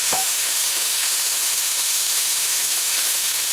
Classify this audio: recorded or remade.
remade